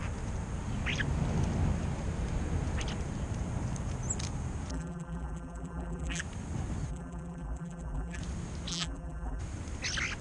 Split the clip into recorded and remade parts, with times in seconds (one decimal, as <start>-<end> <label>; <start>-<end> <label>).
0.0-4.7 recorded; 4.7-6.2 remade; 6.2-6.9 recorded; 6.9-8.2 remade; 8.2-8.7 recorded; 8.7-9.4 remade; 9.4-10.2 recorded